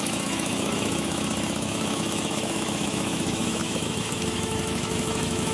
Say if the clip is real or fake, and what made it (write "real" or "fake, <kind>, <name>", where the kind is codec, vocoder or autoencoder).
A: fake, autoencoder, DAC-VAE